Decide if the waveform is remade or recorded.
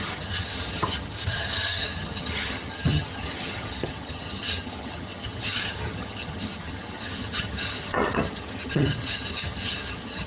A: remade